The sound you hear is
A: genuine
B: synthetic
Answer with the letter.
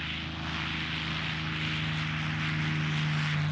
A